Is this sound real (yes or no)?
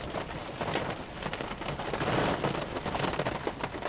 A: yes